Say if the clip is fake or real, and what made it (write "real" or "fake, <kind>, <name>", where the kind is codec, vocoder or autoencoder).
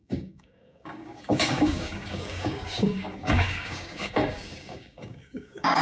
fake, codec, DAC